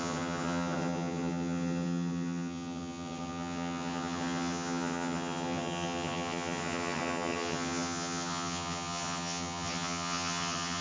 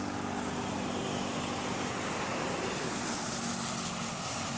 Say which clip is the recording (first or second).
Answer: second